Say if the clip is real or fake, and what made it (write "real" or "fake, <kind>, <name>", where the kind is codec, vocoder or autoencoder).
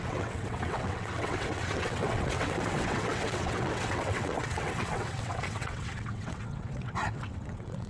fake, vocoder, WaveNeXt